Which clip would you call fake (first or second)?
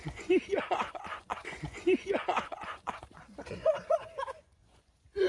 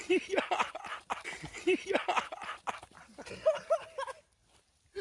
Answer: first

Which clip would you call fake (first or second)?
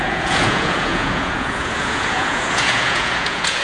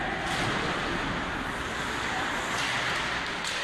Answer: first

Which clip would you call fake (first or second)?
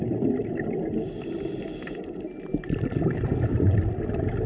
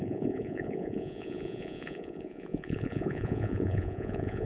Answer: second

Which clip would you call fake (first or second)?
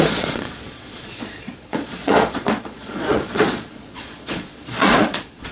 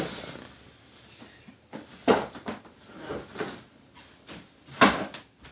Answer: first